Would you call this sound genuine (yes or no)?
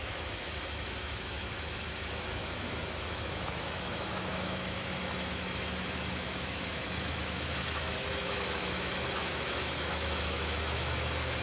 no